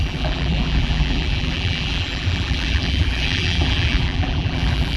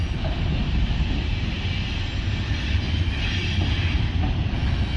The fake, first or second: first